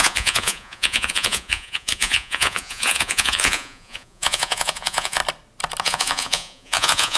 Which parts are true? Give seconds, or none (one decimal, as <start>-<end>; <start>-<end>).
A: 5.2-5.8